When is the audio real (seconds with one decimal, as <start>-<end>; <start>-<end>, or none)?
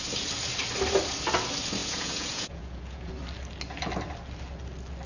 0.0-1.8; 3.1-5.1